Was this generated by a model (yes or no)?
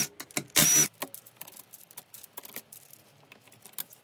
no